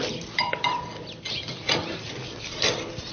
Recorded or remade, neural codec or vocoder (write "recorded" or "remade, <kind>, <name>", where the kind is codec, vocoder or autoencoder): recorded